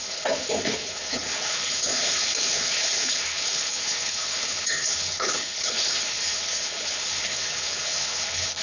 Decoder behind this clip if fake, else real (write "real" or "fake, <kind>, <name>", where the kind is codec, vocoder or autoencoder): fake, codec, HILCodec